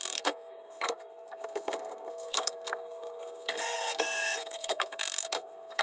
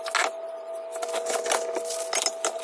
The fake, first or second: first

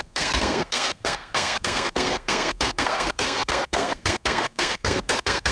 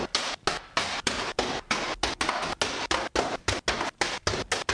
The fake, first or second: first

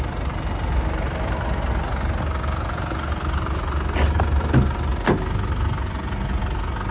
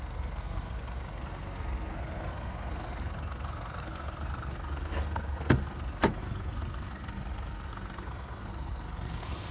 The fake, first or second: second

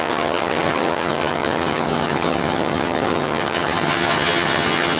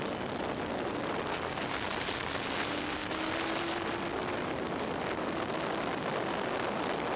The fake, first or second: first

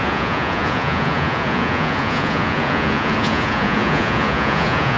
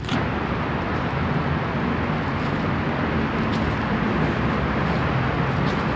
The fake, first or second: first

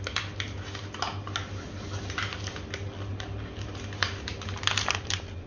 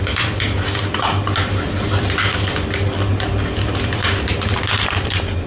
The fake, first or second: second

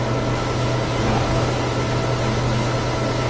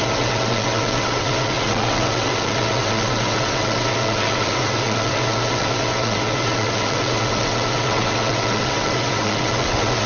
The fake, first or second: second